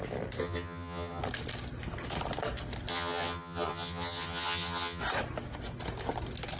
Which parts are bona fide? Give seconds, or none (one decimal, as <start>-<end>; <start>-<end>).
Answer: 0.0-0.4; 1.2-2.9; 5.0-6.6